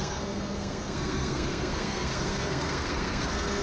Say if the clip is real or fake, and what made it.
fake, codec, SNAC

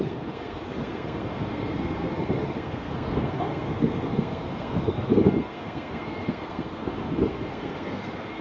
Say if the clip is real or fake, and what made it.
fake, codec, SNAC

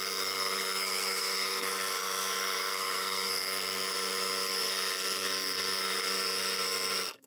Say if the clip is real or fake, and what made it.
fake, codec, SNAC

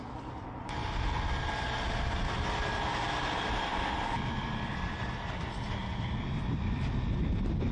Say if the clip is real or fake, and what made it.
real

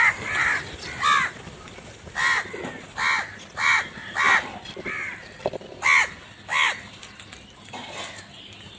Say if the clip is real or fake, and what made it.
real